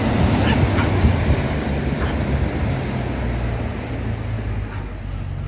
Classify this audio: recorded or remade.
recorded